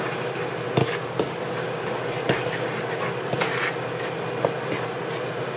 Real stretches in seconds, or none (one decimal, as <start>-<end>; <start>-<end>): 0.0-0.8; 1.4-5.6